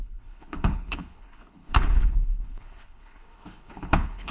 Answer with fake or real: fake